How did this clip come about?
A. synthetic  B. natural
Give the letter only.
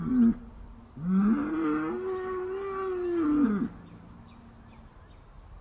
B